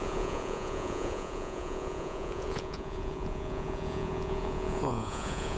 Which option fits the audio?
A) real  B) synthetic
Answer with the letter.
B